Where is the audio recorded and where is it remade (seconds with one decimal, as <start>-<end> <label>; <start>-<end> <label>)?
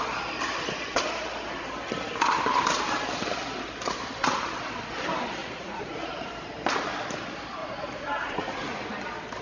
0.0-5.4 recorded; 5.4-6.3 remade; 6.3-7.6 recorded; 7.6-8.9 remade; 8.9-9.4 recorded